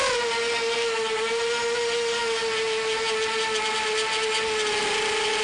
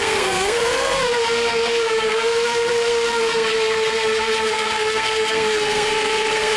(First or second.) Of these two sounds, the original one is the first